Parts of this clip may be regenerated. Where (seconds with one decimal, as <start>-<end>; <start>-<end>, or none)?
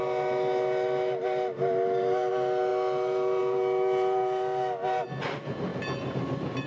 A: none